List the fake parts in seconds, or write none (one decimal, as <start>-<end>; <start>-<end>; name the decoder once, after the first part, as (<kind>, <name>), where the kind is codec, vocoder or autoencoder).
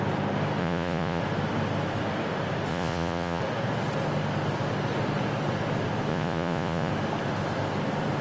0.6-1.2 (vocoder, Vocos); 2.7-3.4; 6.1-6.9